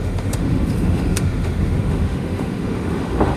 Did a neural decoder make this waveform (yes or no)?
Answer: yes